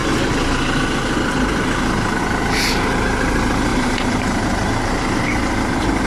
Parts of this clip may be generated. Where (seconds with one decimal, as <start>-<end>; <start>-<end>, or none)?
3.7-5.2